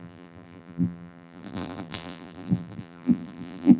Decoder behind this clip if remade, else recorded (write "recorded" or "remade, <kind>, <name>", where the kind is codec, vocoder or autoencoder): remade, vocoder, BigVGAN v2